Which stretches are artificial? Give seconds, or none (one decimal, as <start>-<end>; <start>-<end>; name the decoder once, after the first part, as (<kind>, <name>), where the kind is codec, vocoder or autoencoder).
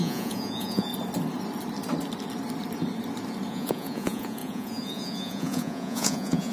0.0-0.9 (vocoder, Vocos); 3.5-6.5